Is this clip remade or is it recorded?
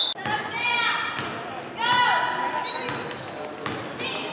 recorded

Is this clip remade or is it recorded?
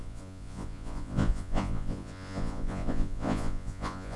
remade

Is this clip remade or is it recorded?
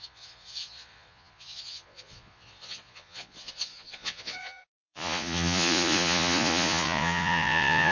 remade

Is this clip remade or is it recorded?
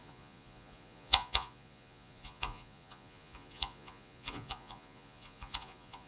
remade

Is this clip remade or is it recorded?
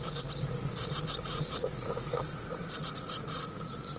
remade